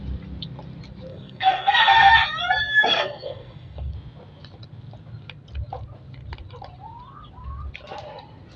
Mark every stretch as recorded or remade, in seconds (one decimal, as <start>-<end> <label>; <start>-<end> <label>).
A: 0.0-1.1 recorded; 1.1-2.1 remade; 2.1-2.6 recorded; 2.6-3.9 remade; 3.9-8.6 recorded